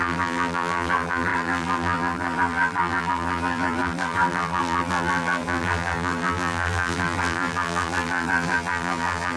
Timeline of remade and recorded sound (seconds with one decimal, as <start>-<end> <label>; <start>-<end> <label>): 0.0-9.4 remade